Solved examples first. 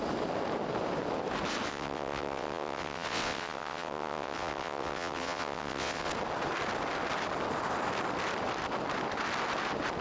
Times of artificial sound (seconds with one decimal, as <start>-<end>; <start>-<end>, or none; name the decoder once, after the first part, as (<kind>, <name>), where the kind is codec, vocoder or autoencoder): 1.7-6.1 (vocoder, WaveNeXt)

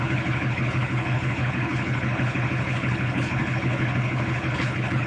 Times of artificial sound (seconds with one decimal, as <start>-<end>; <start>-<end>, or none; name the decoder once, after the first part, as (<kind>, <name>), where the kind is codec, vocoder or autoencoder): 0.0-5.1 (codec, HILCodec)

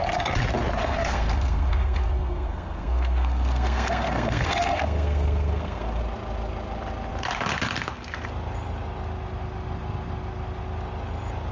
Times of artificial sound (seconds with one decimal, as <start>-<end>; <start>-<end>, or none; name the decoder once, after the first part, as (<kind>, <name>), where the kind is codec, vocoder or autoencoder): 0.8-6.0 (codec, SNAC)